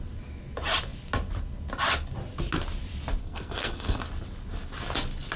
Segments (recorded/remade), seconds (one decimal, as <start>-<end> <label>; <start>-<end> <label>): 0.0-3.2 recorded; 3.2-4.1 remade; 4.1-5.4 recorded